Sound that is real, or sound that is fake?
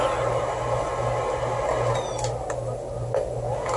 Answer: real